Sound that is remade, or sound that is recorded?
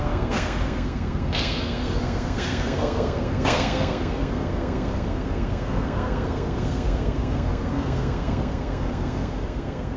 remade